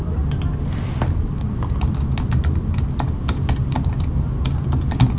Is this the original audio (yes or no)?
yes